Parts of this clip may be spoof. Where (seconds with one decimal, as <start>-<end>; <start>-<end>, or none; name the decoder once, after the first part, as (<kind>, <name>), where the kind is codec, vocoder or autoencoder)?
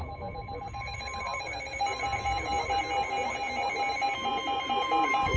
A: 0.0-2.8 (vocoder, Vocos); 4.2-5.4